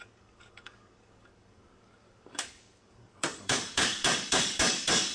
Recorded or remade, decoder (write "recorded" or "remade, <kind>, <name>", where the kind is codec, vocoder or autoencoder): remade, codec, DAC